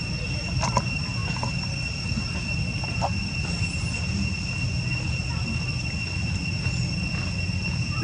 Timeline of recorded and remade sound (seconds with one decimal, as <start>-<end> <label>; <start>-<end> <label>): 0.0-1.2 recorded; 1.2-3.7 remade; 3.7-8.0 recorded